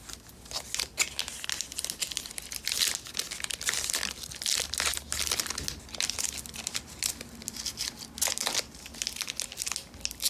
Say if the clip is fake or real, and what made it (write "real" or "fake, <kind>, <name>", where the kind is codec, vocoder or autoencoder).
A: real